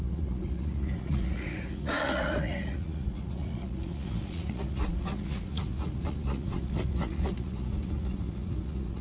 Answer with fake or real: fake